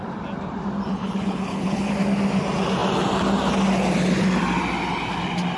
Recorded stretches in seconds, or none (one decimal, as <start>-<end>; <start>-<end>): 0.0-0.9; 1.9-5.6